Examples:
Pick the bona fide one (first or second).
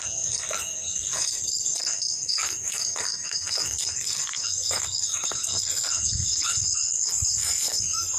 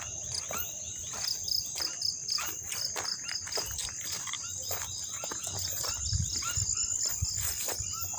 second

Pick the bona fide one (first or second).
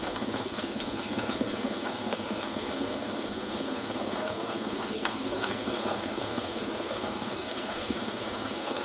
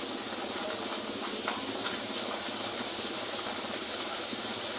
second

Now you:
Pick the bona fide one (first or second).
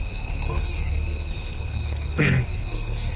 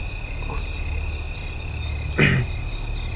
second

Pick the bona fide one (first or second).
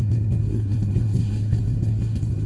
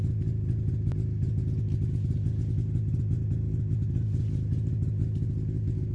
second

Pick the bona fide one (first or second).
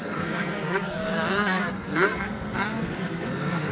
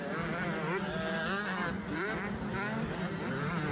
second